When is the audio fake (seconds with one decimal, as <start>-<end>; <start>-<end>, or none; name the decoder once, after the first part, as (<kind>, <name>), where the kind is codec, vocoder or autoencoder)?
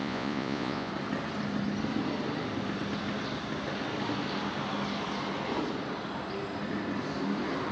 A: 0.0-0.9 (vocoder, Vocos)